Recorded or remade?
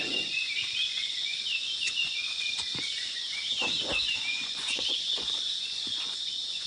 remade